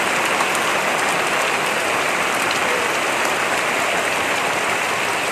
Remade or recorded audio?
recorded